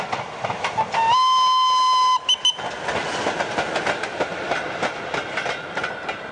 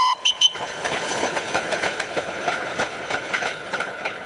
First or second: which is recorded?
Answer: first